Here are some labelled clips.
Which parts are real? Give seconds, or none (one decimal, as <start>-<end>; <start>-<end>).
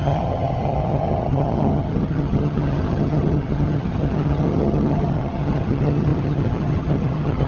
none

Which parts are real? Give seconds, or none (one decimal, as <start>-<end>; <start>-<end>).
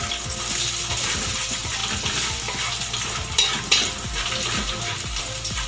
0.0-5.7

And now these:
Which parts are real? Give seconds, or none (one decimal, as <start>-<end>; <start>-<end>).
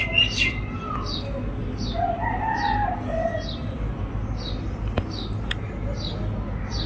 0.0-6.9